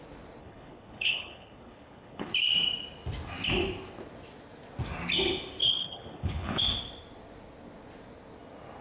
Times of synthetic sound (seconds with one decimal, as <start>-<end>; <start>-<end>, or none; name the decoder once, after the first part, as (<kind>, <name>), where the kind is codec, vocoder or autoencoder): 0.4-2.3 (codec, HILCodec); 5.6-6.6